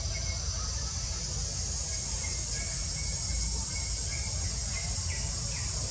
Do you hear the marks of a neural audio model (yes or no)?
no